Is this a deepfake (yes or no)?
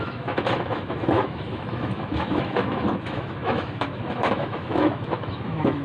yes